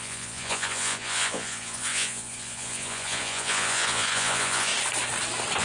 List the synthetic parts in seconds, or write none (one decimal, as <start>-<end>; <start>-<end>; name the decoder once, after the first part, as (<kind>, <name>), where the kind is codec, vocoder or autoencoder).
0.0-4.7 (vocoder, Vocos)